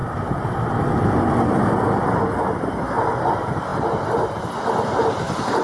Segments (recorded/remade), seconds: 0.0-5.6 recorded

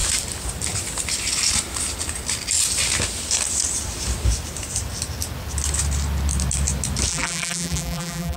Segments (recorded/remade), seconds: 0.0-7.1 recorded; 7.1-8.4 remade

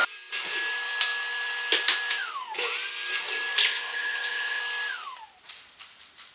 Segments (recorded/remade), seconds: 0.0-3.6 recorded; 3.6-4.6 remade; 4.6-6.3 recorded

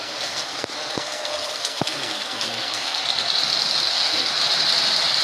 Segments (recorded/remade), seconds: 0.0-3.0 remade; 3.0-3.9 recorded; 3.9-4.3 remade; 4.3-5.2 recorded

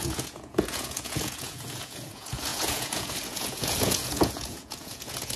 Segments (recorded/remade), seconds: 0.0-5.4 remade

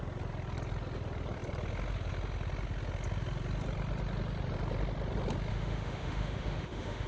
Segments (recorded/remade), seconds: 0.0-5.5 recorded; 5.5-7.1 remade